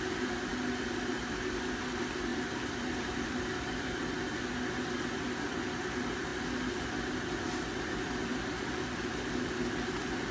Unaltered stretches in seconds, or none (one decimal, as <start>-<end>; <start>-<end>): 0.0-2.3; 4.2-10.3